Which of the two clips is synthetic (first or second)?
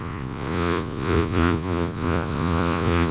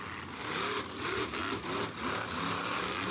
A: first